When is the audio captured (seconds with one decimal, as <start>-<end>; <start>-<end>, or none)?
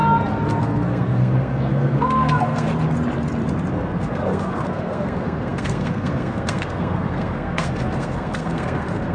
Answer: 0.0-0.6; 2.7-3.7